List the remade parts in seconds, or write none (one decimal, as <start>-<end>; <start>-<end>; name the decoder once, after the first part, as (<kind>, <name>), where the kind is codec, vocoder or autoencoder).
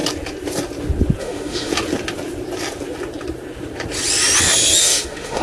1.2-1.7 (autoencoder, DAC-VAE); 4.8-5.4